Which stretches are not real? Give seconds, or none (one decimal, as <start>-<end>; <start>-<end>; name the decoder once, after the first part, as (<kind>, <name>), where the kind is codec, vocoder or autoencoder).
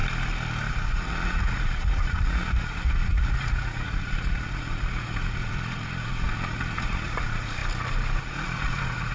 0.7-7.6 (vocoder, Vocos); 8.2-9.1